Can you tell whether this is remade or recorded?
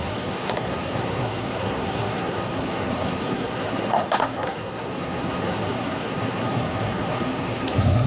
remade